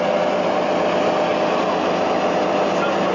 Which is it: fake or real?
real